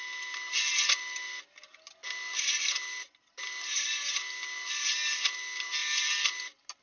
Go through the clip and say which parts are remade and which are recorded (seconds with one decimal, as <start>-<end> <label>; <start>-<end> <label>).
0.0-6.8 recorded